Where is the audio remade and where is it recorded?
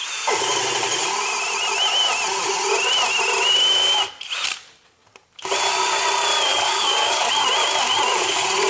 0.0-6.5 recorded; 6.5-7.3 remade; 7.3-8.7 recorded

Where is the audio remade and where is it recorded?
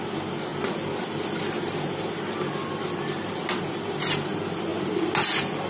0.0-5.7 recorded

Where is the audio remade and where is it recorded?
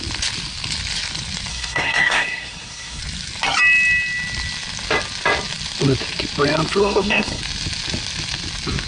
0.0-1.5 recorded; 1.5-3.0 remade; 3.0-6.8 recorded; 6.8-7.4 remade; 7.4-8.9 recorded